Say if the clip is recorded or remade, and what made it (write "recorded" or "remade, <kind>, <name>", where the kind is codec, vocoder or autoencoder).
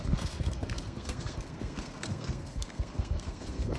remade, codec, SNAC